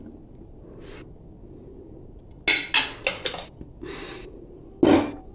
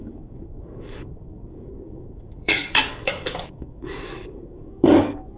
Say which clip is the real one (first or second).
first